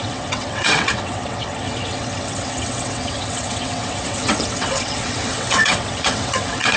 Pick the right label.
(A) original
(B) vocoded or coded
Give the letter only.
B